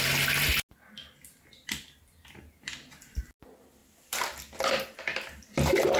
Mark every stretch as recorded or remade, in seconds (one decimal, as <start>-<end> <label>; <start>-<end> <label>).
0.0-6.0 recorded